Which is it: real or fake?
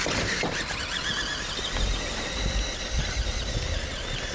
real